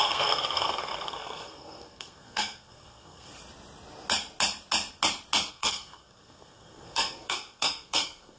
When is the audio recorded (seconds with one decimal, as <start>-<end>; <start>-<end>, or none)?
3.3-5.5